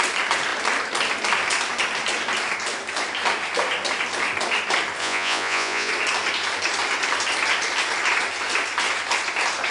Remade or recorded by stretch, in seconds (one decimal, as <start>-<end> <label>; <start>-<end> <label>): 0.0-5.0 recorded; 5.0-5.9 remade; 5.9-9.7 recorded